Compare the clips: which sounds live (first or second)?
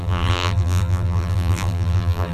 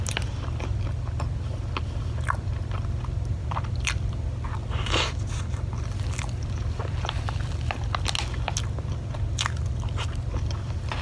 second